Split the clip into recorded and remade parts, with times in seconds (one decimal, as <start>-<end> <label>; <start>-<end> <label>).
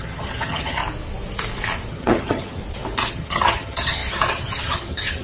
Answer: 0.0-0.8 remade; 0.8-1.9 recorded; 1.9-2.6 remade; 2.6-3.1 recorded; 3.1-5.2 remade